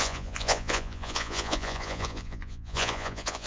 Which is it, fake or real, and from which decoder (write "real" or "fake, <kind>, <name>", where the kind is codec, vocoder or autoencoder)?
fake, vocoder, Vocos